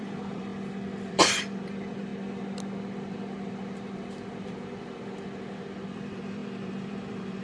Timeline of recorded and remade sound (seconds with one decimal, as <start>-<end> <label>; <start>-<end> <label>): 0.0-0.5 remade; 0.5-1.1 recorded; 1.1-2.1 remade; 2.1-5.9 recorded; 5.9-7.4 remade